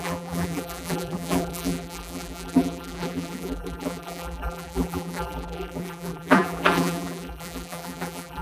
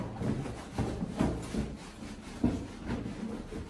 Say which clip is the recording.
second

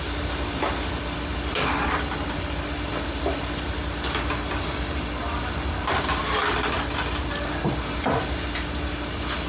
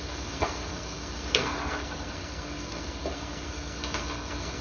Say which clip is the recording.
first